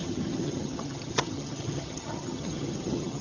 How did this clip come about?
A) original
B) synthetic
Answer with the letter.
B